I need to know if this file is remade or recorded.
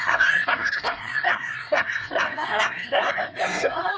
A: remade